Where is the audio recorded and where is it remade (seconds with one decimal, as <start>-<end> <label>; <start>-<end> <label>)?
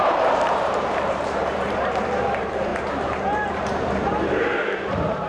0.0-5.3 remade